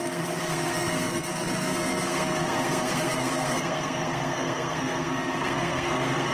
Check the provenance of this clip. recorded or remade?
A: remade